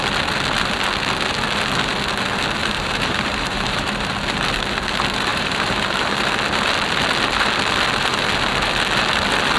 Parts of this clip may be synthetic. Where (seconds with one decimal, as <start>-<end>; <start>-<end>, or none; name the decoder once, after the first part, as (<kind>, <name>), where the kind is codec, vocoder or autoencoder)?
2.6-4.1 (vocoder, BigVGAN v2); 5.3-6.1